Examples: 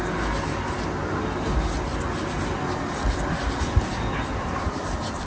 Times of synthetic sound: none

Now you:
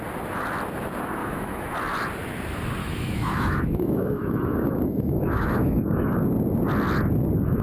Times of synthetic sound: 1.2-1.7 (autoencoder, DAC-VAE); 2.8-6.1

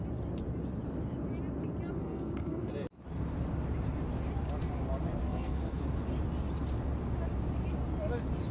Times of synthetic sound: 2.0-2.7 (codec, SNAC); 5.2-5.8

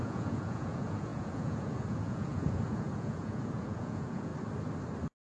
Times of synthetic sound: 0.0-4.3 (vocoder, Vocos)

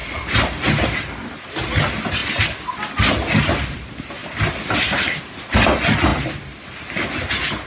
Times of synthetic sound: 4.2-4.7 (vocoder, BigVGAN v2)